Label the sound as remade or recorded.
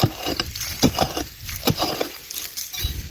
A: remade